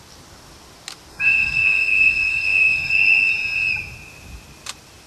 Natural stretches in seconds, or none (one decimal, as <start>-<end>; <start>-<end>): 0.0-1.1; 3.3-5.1